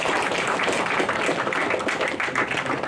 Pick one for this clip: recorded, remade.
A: recorded